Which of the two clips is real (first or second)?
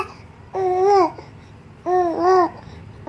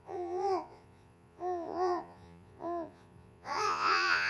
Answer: first